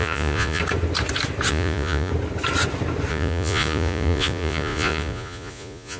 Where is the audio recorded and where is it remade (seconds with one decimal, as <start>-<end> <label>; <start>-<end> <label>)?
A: 0.0-0.6 remade; 0.6-1.5 recorded; 1.5-2.1 remade; 2.1-3.1 recorded; 3.1-6.0 remade